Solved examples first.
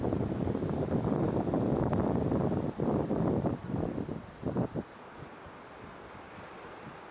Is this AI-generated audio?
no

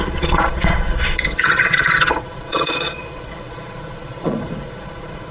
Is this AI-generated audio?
yes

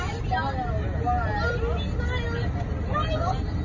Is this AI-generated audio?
no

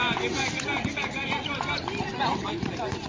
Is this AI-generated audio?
no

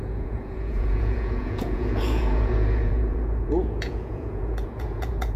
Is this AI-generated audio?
yes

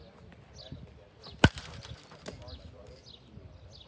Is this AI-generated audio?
no